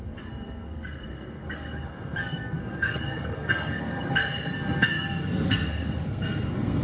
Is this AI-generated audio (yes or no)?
yes